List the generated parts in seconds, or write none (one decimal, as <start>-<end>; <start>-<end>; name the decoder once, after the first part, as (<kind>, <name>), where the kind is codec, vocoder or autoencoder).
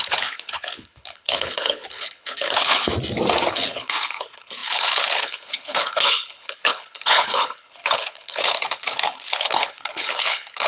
0.0-2.9 (codec, HILCodec); 3.5-10.7